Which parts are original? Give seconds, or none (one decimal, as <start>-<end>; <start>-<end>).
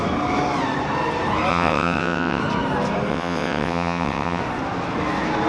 0.0-1.5; 2.4-3.1; 4.4-5.5